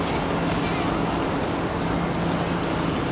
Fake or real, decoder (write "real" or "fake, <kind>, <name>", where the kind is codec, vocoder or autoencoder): real